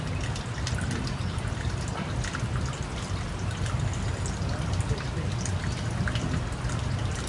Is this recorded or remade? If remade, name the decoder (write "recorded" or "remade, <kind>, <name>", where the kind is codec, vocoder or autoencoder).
recorded